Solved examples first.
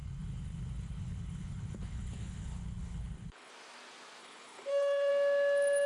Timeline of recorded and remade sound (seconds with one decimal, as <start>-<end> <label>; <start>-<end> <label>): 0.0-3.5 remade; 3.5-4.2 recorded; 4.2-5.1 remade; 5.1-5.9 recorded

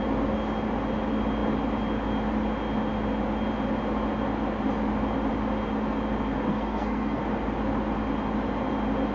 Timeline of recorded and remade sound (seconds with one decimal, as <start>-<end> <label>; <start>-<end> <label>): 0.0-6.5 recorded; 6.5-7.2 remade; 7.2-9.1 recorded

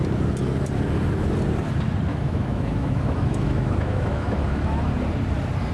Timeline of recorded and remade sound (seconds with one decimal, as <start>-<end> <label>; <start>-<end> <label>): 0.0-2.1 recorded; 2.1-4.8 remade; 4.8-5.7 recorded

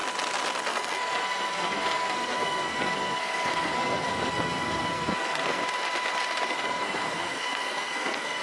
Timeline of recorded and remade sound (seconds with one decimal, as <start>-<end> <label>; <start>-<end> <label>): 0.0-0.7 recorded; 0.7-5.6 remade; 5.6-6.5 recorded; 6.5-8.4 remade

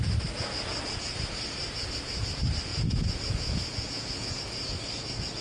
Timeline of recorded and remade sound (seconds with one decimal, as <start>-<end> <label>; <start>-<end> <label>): 0.0-2.7 recorded; 2.7-4.3 remade; 4.3-5.4 recorded